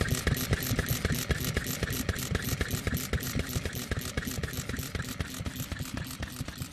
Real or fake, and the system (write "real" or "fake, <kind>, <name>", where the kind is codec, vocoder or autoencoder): real